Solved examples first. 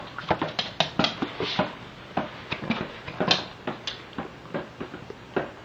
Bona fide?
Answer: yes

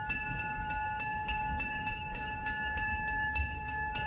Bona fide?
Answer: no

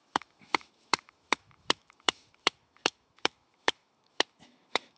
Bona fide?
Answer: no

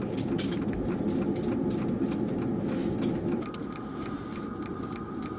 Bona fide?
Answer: yes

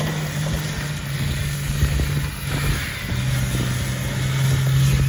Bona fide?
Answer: yes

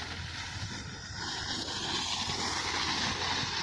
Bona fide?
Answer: yes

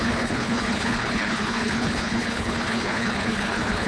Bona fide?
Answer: no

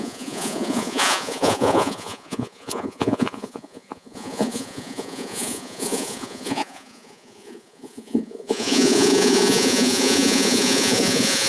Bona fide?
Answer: no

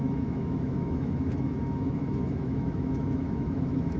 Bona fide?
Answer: no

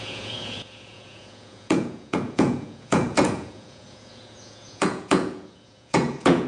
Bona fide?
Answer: no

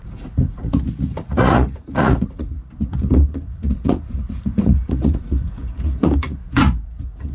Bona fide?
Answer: no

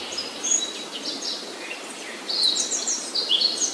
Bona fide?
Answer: yes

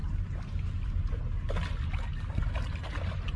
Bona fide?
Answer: yes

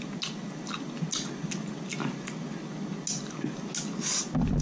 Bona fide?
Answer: yes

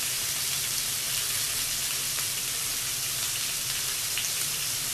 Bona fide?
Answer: no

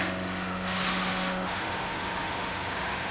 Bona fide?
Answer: no